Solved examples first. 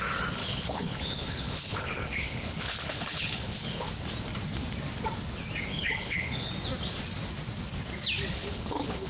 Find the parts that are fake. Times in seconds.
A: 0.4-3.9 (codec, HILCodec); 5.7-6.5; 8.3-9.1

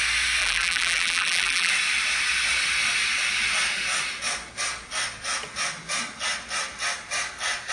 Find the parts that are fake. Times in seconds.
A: 0.4-1.7 (vocoder, BigVGAN v2)

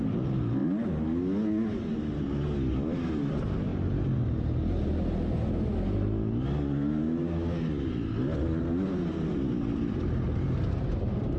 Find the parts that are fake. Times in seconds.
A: none

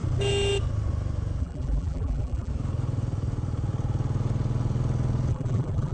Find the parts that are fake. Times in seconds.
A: 1.4-2.5 (vocoder, BigVGAN v2); 5.3-5.9

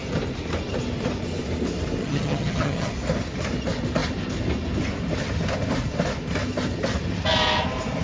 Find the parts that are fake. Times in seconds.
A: 2.0-2.9 (vocoder, HiFi-GAN)

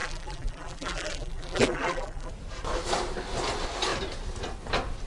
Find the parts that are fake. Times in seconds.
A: 0.0-2.3 (vocoder, BigVGAN v2)

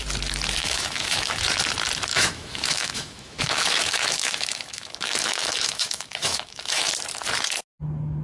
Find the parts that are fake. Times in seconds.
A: 0.6-1.4 (autoencoder, DAC-VAE); 2.1-6.9